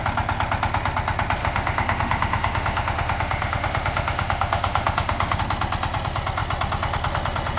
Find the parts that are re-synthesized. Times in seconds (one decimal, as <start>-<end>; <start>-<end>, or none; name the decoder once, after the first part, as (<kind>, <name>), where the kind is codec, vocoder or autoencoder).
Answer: 1.4-5.4 (autoencoder, DAC-VAE)